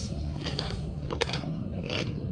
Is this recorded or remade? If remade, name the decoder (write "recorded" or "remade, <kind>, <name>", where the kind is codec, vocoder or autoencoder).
remade, codec, SNAC